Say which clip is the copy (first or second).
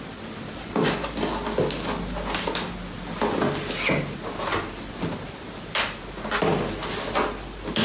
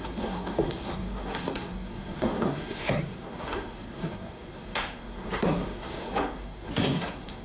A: second